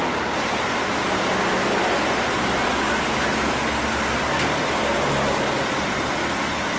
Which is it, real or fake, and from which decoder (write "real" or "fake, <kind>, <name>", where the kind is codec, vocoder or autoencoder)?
real